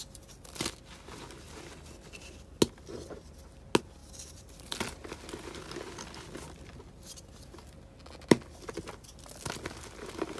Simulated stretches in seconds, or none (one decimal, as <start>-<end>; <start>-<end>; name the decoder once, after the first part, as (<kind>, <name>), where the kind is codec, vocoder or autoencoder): none